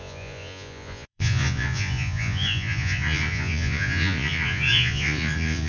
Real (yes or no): no